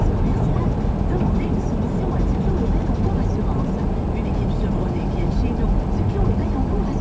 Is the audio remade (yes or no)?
no